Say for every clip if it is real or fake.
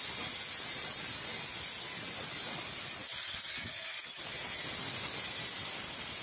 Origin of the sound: real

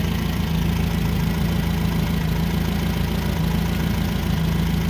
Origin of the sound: real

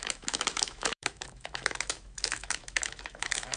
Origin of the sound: fake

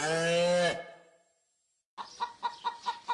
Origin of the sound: real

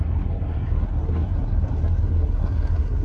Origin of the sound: fake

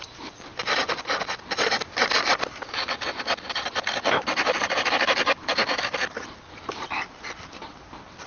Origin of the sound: real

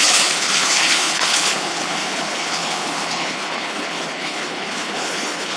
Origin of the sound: fake